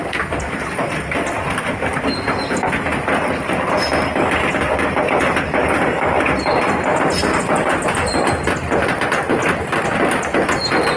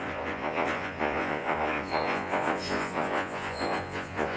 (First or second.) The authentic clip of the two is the first